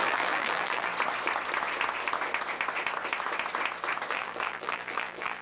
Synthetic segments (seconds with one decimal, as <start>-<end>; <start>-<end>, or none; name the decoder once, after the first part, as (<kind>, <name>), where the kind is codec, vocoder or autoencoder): 0.0-0.9 (vocoder, BigVGAN v2); 4.1-5.4